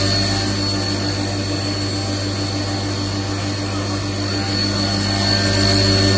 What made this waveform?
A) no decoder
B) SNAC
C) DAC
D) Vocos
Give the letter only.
A